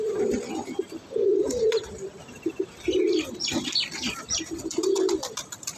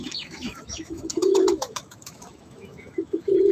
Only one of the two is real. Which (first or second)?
first